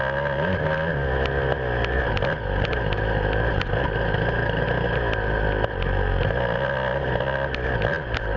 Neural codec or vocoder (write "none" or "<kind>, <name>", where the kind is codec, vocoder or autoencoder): none